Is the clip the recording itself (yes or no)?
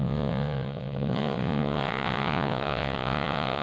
no